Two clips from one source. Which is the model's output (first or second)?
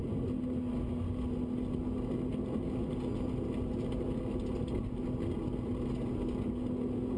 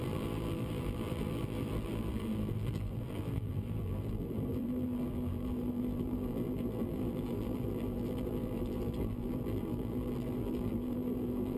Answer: second